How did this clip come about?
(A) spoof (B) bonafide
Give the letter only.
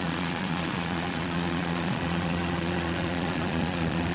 A